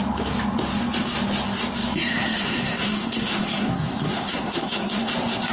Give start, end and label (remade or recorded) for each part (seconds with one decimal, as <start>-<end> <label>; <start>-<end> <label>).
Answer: 0.0-2.1 recorded; 2.1-5.1 remade; 5.1-5.5 recorded

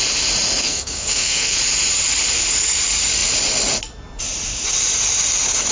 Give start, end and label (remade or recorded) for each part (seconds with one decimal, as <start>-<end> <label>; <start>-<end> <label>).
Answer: 0.0-0.6 recorded; 0.6-1.6 remade; 1.6-5.7 recorded

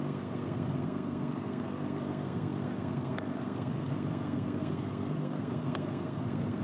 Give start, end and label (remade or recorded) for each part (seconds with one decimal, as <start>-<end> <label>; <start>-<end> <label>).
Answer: 0.0-6.6 remade